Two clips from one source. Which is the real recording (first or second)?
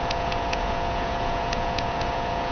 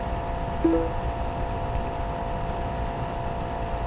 second